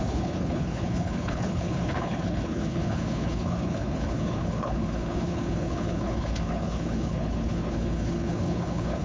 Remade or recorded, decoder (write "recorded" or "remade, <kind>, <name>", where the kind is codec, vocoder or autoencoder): remade, codec, HILCodec